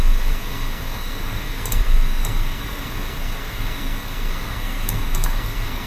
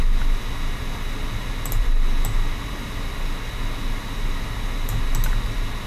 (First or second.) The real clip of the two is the second